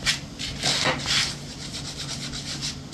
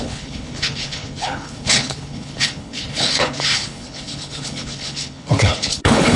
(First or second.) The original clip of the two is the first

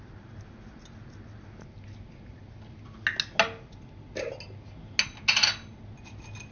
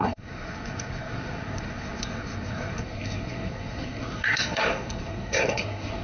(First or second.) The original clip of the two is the first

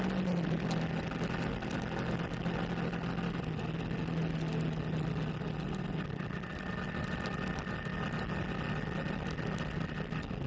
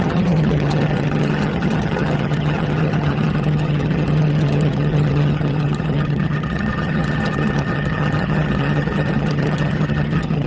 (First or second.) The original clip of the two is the first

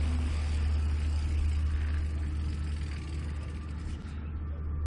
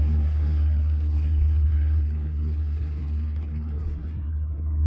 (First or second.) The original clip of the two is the first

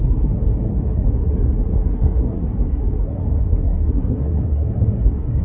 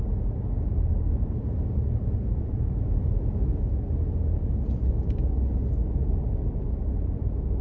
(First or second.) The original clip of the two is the second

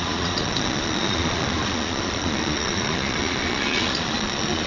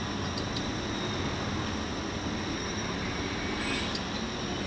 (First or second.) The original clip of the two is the second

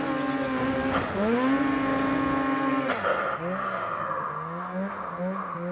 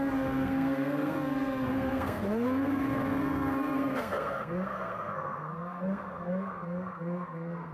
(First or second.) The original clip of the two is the first